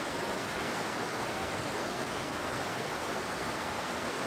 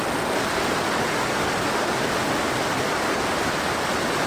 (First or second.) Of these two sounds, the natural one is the second